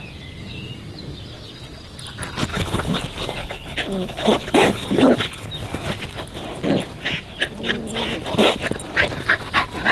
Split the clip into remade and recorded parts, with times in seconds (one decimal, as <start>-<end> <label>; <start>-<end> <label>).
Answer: 0.0-2.5 recorded; 2.5-3.0 remade; 3.0-3.4 recorded; 3.4-5.5 remade; 5.5-9.9 recorded